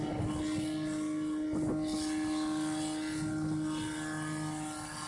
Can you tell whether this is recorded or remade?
recorded